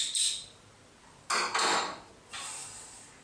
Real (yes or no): yes